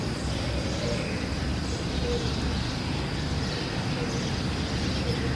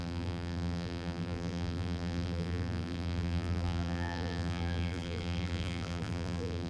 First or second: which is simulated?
second